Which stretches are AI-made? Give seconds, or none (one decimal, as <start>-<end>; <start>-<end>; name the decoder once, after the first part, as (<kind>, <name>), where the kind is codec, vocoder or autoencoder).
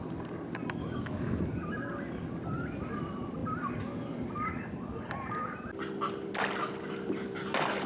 0.8-1.4 (autoencoder, DAC-VAE)